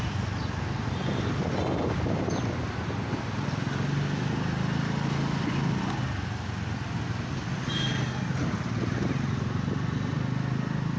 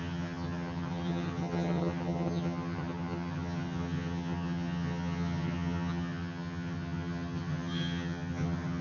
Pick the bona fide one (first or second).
first